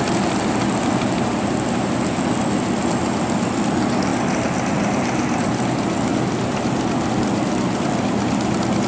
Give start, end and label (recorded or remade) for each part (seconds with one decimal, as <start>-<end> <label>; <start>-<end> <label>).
0.0-8.9 recorded